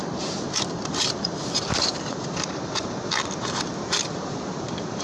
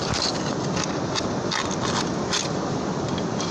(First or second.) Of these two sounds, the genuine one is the second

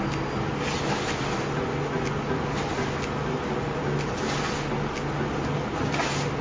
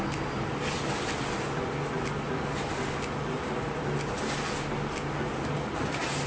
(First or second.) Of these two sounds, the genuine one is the first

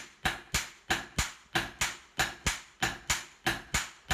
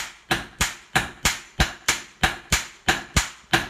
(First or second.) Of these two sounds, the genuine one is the first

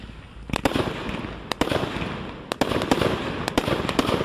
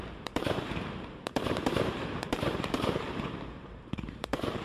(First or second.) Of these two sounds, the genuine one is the first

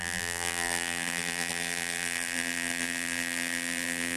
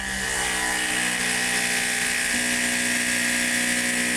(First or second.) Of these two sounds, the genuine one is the second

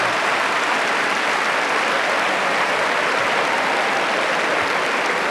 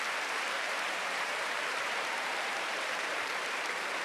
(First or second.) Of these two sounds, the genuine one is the first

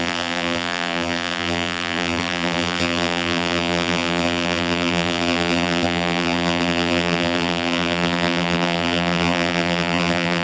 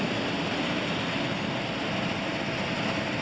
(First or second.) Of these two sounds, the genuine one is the second